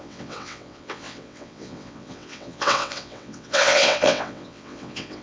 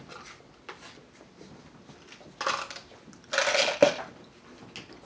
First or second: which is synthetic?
first